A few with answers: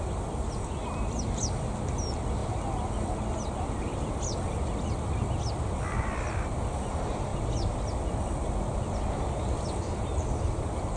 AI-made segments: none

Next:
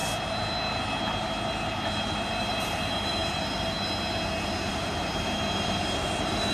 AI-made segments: 2.0-3.2 (vocoder, BigVGAN v2); 4.7-6.5

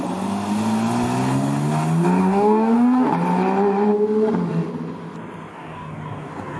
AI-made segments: 2.2-3.1 (codec, DAC); 5.5-6.6